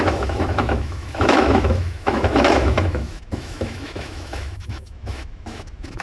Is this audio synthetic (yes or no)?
yes